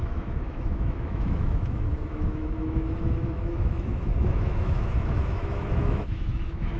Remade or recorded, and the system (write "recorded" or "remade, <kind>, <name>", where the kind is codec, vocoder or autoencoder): remade, autoencoder, DAC-VAE